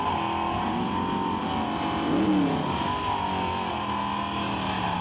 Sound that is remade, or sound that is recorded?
recorded